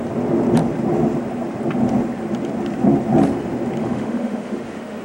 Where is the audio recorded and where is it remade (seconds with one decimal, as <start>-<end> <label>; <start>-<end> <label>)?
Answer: 0.0-3.8 recorded; 3.8-5.0 remade